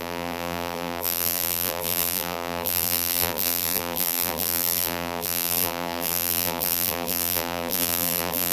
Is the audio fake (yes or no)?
yes